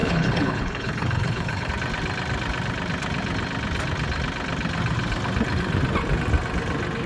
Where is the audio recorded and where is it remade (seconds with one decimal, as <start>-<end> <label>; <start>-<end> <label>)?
0.0-1.7 remade; 1.7-7.1 recorded